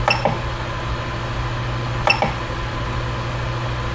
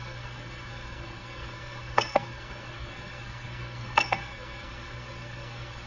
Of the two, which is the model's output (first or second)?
second